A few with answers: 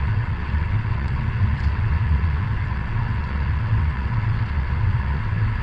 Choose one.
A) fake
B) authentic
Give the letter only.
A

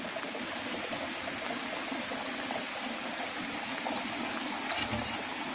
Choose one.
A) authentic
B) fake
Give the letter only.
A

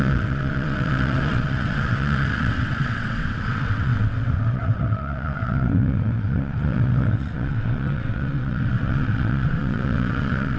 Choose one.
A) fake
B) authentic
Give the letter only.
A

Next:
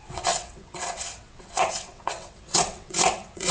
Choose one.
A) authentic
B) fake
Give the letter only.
B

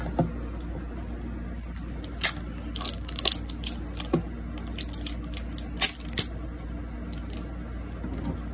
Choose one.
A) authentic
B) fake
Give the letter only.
A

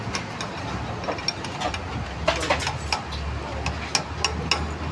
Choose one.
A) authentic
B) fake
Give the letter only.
A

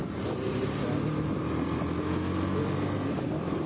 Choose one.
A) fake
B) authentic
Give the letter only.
B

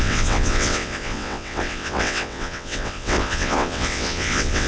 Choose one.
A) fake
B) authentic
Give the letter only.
A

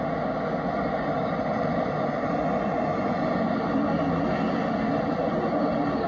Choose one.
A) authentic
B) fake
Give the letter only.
A